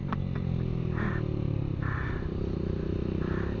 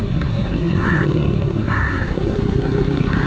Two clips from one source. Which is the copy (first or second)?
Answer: second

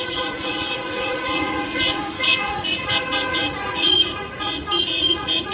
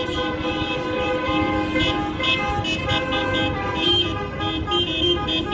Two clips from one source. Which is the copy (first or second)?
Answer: first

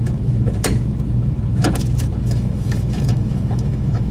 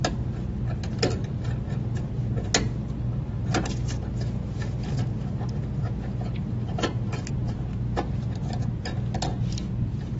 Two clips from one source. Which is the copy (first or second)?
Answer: first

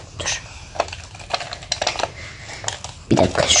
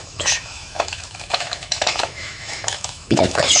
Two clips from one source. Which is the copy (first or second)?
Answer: second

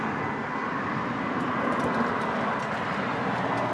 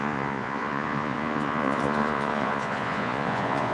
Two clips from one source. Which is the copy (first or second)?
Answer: second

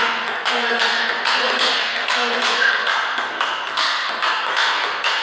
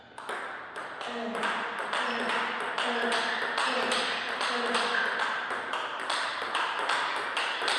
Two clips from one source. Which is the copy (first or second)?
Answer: first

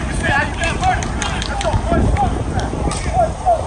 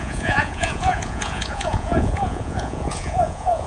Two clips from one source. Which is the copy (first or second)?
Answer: second